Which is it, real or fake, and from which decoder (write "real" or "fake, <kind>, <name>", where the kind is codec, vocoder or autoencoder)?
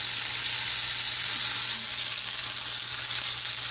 real